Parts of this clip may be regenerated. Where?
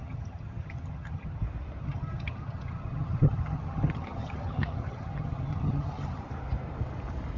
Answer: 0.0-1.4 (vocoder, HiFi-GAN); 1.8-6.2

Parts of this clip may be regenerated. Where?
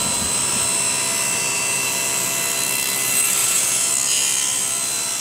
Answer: 3.4-3.9 (vocoder, Vocos)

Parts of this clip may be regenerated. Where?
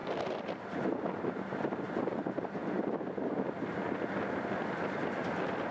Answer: none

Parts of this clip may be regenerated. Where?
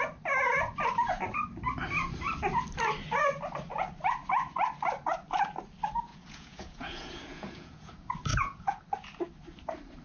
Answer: 6.1-7.9 (vocoder, Vocos); 8.3-8.8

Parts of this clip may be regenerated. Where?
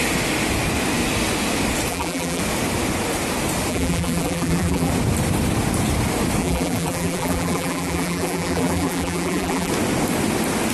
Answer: 1.9-2.4 (vocoder, BigVGAN v2); 3.7-4.9; 6.4-9.7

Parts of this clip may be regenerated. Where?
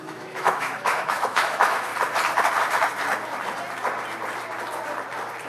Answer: 0.0-1.9 (autoencoder, DAC-VAE)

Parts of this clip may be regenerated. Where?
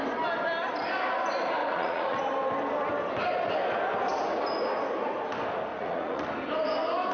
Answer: 1.6-2.2 (vocoder, Vocos); 5.7-6.3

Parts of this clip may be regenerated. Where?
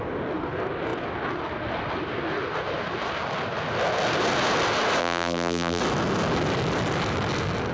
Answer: 5.0-5.8 (vocoder, BigVGAN v2)